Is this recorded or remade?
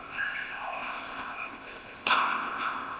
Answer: remade